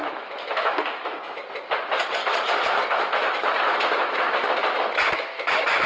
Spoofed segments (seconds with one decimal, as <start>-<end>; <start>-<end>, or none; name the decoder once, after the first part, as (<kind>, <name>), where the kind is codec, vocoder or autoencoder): 0.0-1.2 (autoencoder, DAC-VAE); 2.2-5.9